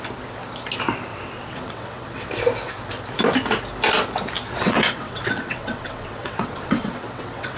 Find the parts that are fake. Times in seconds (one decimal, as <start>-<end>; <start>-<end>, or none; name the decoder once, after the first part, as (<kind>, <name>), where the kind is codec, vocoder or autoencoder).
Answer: 1.1-2.3 (vocoder, WaveNeXt); 4.6-7.6